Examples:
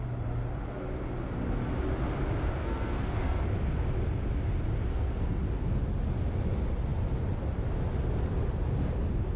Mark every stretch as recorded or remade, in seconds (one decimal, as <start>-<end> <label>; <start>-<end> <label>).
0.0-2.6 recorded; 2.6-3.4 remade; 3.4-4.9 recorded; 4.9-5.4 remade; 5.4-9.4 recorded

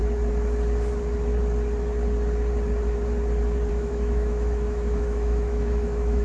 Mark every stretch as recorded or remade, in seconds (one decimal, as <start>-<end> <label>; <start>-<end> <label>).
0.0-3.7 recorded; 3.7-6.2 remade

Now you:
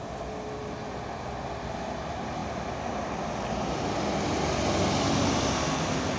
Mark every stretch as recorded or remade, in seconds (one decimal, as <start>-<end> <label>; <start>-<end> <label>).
0.0-6.2 recorded

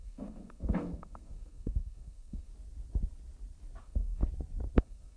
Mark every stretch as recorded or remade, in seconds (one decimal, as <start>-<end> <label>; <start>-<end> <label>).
0.0-2.5 remade; 2.5-3.8 recorded; 3.8-4.2 remade; 4.2-4.8 recorded; 4.8-5.2 remade

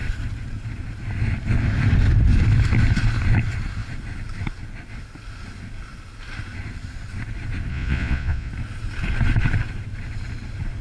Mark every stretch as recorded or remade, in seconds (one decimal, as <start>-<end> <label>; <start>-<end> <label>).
0.0-7.7 recorded; 7.7-8.5 remade; 8.5-10.8 recorded

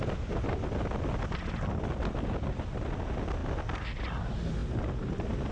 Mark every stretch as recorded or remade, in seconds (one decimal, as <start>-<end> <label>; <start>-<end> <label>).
0.0-5.5 recorded

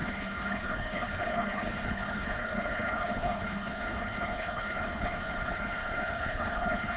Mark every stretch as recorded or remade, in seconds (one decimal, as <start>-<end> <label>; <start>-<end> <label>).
0.0-7.0 remade